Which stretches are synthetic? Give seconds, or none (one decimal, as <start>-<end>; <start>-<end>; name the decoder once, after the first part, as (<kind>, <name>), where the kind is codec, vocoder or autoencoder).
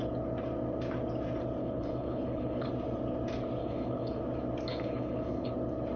1.6-2.7 (codec, HILCodec); 3.6-4.2; 4.7-5.5